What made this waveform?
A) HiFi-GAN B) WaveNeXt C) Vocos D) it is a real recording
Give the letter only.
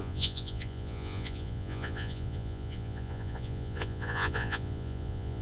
C